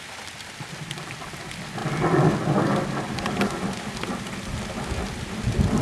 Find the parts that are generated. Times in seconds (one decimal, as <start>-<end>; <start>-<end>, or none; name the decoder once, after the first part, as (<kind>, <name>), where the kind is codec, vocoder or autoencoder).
none